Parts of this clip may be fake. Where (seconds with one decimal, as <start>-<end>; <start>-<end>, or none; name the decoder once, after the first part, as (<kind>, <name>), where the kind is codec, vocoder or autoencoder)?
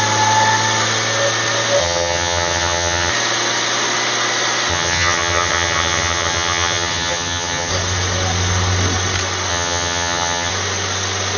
1.8-3.1 (vocoder, HiFi-GAN); 4.7-7.7; 9.5-10.5